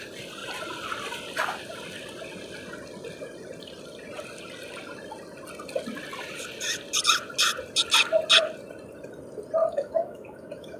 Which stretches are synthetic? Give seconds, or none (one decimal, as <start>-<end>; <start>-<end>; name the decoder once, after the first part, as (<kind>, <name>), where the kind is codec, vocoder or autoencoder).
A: 9.6-10.8 (autoencoder, DAC-VAE)